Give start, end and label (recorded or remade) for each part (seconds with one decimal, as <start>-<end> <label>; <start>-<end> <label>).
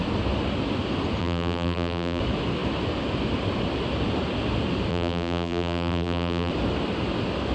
0.0-1.2 recorded; 1.2-2.2 remade; 2.2-4.9 recorded; 4.9-6.5 remade; 6.5-7.5 recorded